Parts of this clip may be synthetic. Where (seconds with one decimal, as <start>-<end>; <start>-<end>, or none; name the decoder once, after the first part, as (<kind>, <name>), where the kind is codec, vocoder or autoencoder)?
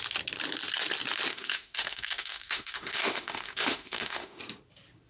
1.3-4.4 (autoencoder, DAC-VAE)